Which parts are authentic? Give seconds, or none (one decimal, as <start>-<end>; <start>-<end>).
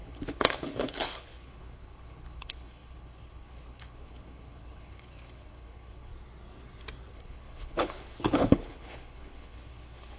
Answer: 6.1-7.1